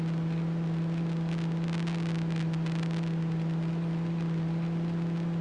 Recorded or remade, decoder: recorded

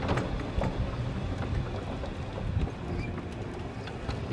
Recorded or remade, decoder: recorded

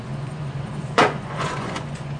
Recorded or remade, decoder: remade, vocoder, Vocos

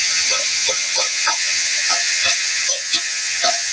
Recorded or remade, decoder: remade, vocoder, HiFi-GAN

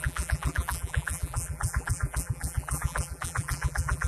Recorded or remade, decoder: remade, vocoder, BigVGAN v2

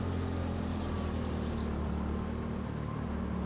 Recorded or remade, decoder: recorded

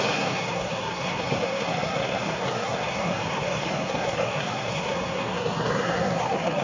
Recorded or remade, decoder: remade, codec, SNAC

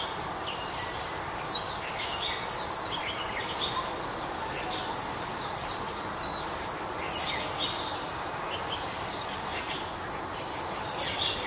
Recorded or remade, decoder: recorded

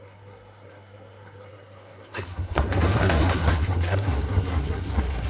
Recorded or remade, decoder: remade, codec, SNAC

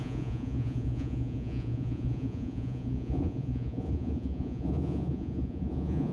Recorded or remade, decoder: remade, vocoder, Vocos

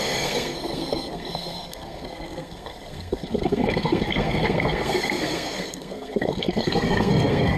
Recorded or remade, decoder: remade, codec, SNAC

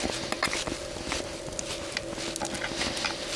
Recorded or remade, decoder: recorded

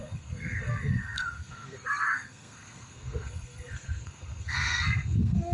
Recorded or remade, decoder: remade, codec, SNAC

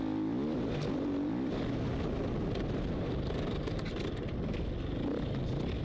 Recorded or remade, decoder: recorded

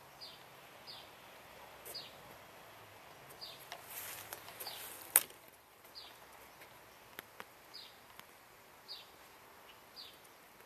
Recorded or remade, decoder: recorded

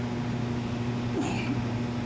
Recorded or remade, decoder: recorded